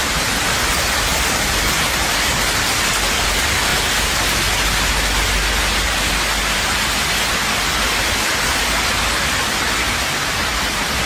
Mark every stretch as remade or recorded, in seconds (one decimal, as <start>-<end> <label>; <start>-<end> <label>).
0.0-0.7 remade; 0.7-1.1 recorded; 1.1-1.7 remade; 1.7-11.1 recorded